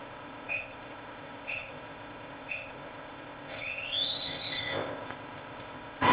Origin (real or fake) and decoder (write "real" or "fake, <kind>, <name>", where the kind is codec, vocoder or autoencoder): fake, codec, ZipCodec